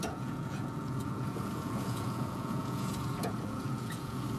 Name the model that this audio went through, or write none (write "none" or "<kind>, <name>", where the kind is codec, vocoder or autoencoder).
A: vocoder, Vocos